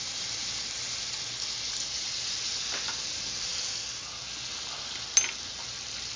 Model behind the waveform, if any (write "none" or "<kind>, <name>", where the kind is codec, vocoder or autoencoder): none